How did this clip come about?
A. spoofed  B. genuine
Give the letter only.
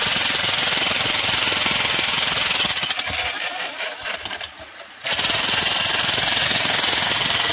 B